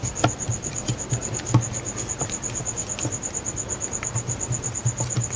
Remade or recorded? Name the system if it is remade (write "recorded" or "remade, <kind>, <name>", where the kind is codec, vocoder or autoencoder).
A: recorded